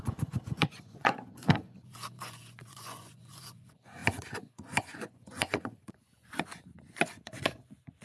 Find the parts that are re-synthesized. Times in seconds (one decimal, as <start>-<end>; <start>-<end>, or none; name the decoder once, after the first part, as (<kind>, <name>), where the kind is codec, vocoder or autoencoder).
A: 0.0-8.0 (vocoder, Vocos)

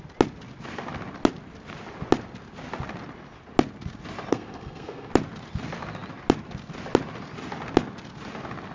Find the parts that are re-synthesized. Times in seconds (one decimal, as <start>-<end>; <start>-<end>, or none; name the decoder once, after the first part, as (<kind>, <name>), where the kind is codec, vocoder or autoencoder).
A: 4.3-5.1 (codec, SNAC)

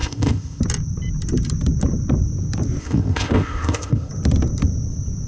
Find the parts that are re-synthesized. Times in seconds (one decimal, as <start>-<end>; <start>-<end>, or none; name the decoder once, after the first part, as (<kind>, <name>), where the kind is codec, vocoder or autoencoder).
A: 0.0-0.6 (codec, ZipCodec); 2.8-4.1

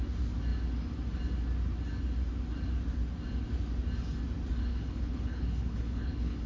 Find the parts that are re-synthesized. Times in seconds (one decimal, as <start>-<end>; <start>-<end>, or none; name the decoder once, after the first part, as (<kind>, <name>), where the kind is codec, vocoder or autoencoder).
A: 4.7-6.5 (codec, HILCodec)